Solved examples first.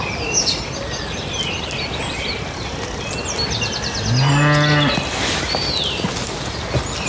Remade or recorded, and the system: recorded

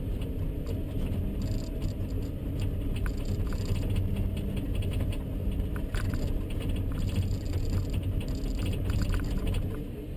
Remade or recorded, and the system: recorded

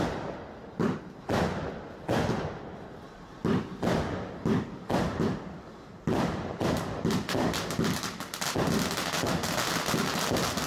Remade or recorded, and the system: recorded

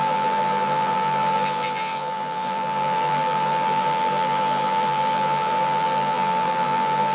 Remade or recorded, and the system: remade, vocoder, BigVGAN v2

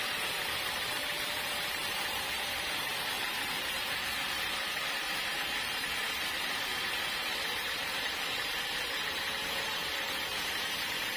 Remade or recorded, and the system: remade, vocoder, BigVGAN v2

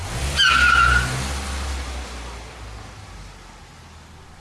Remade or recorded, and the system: recorded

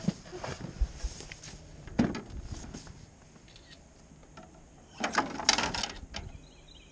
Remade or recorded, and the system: recorded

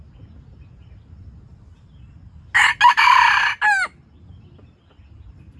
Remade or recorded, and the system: recorded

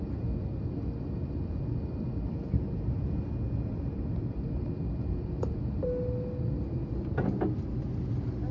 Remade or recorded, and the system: recorded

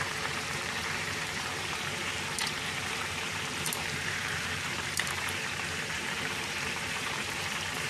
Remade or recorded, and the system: remade, vocoder, BigVGAN v2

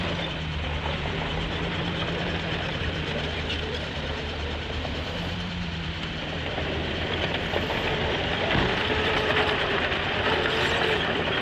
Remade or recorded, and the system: remade, vocoder, BigVGAN v2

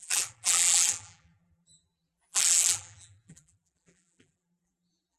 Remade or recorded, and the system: remade, vocoder, BigVGAN v2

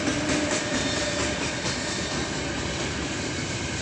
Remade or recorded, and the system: remade, vocoder, BigVGAN v2